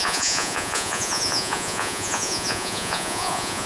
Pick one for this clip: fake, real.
fake